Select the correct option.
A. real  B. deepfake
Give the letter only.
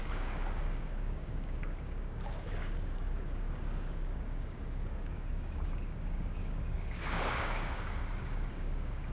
B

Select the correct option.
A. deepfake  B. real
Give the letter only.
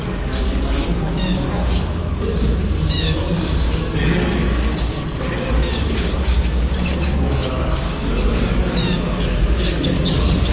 A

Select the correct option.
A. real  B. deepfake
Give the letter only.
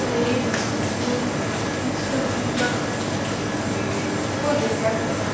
A